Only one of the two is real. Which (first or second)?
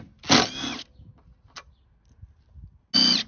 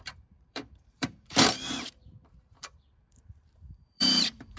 first